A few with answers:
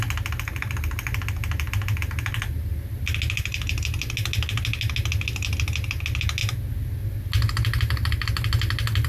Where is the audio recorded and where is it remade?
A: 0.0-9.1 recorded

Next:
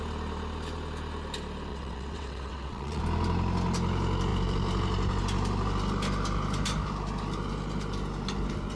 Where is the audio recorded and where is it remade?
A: 0.0-1.7 recorded; 1.7-3.0 remade; 3.0-8.8 recorded